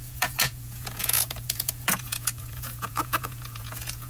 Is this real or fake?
fake